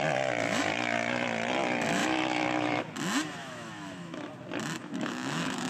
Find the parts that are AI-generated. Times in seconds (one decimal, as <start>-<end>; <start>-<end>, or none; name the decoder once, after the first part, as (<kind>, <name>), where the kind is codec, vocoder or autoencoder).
2.0-2.8 (autoencoder, DAC-VAE); 3.4-4.3; 4.8-5.7